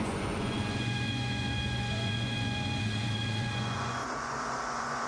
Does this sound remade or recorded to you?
remade